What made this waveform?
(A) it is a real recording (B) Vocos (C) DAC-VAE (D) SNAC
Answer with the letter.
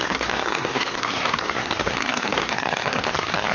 D